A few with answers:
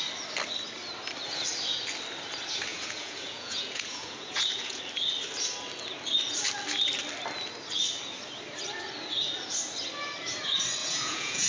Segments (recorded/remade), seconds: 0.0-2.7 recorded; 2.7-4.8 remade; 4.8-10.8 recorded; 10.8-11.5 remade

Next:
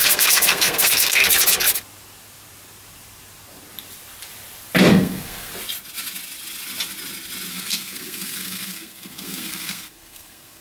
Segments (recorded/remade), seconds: 0.0-1.2 remade; 1.2-4.9 recorded; 4.9-5.5 remade; 5.5-7.5 recorded; 7.5-10.6 remade

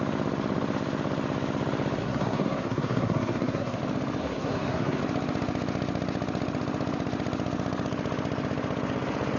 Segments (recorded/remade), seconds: 0.0-2.0 recorded; 2.0-3.8 remade; 3.8-4.2 recorded; 4.2-5.0 remade; 5.0-9.4 recorded

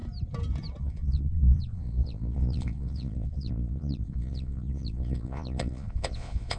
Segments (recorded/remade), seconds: 0.0-0.8 recorded; 0.8-6.6 remade

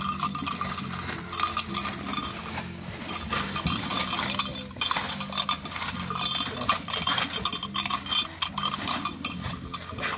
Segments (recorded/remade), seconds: 0.0-10.2 recorded